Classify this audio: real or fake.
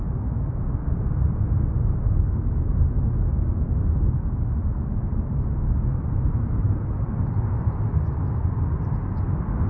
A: real